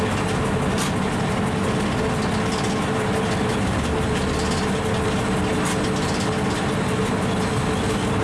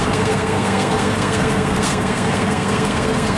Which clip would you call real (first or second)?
first